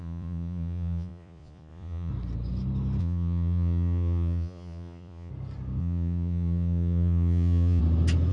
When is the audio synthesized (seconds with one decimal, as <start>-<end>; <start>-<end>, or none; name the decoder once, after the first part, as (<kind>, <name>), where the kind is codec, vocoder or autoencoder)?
0.0-2.1 (vocoder, Vocos); 3.0-5.3; 5.8-7.8